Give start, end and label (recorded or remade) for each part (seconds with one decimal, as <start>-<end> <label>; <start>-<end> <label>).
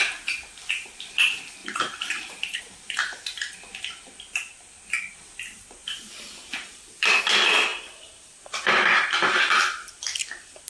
0.0-1.6 recorded; 1.6-2.6 remade; 2.6-5.8 recorded; 5.8-7.2 remade; 7.2-10.7 recorded